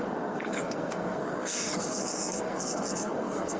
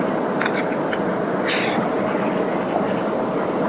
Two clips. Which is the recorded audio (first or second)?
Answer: second